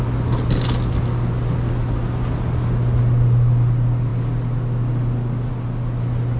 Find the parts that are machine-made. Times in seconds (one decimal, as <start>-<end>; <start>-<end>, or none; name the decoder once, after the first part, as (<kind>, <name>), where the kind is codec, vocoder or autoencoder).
none